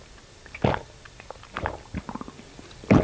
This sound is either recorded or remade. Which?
recorded